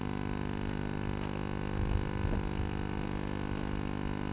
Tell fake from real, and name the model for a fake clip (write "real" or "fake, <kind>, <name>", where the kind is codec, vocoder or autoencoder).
real